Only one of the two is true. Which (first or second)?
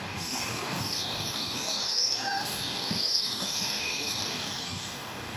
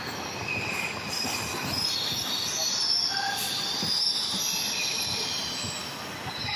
second